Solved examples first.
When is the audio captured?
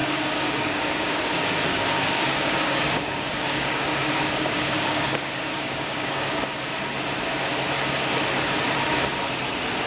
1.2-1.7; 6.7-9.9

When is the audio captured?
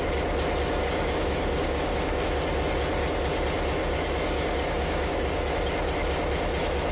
0.0-0.8; 2.2-3.8; 5.5-6.9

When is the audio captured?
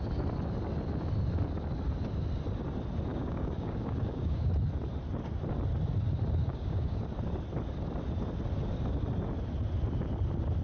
0.0-3.1; 4.5-6.4; 7.0-10.6